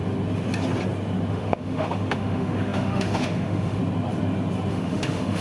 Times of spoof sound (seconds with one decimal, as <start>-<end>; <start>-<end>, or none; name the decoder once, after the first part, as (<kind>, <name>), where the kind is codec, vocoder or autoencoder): 1.3-3.8 (autoencoder, DAC-VAE); 4.7-5.4